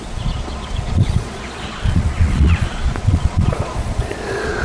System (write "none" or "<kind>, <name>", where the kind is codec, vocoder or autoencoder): vocoder, Vocos